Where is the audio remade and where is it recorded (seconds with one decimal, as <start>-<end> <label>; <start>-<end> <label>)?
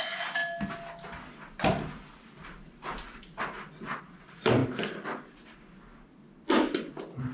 0.0-7.3 recorded